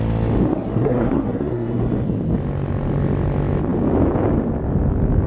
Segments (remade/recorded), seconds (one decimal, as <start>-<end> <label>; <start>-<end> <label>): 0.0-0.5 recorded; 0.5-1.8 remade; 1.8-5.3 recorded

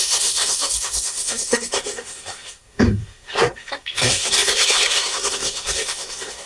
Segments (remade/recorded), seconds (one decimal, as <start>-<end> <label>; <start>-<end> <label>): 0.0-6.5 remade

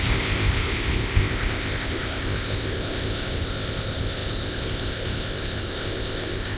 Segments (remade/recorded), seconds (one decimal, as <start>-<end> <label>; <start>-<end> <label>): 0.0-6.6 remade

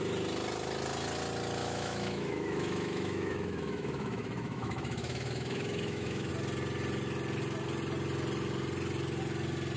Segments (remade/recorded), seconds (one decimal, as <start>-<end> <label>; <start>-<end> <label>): 0.0-1.6 recorded; 1.6-6.3 remade; 6.3-9.8 recorded

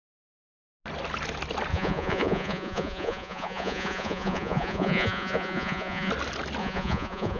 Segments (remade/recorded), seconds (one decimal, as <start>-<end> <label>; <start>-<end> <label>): 0.0-1.7 recorded; 1.7-6.1 remade; 6.1-6.6 recorded; 6.6-7.4 remade

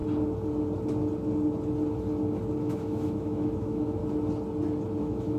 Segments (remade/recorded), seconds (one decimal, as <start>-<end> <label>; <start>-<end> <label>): 0.0-2.6 recorded; 2.6-4.0 remade; 4.0-5.0 recorded; 5.0-5.4 remade